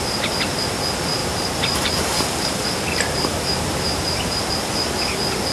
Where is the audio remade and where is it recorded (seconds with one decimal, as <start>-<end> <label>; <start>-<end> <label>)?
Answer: 0.0-1.2 recorded; 1.2-4.5 remade; 4.5-5.5 recorded